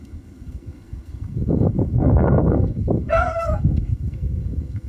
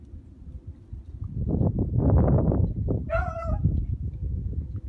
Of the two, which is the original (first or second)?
second